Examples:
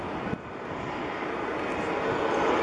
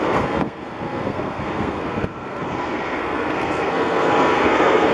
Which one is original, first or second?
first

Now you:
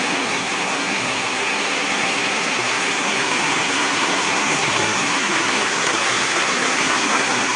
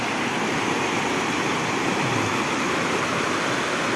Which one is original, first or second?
second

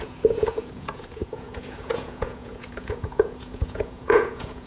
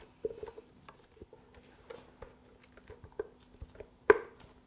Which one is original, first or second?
second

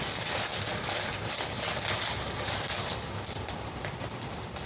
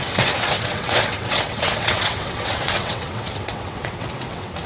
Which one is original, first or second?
first